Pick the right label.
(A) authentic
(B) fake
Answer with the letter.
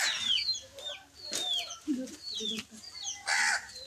A